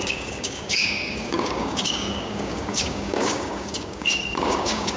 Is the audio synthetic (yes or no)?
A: yes